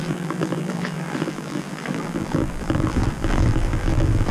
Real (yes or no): no